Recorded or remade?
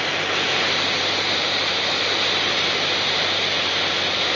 recorded